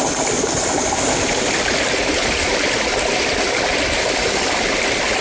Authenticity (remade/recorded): recorded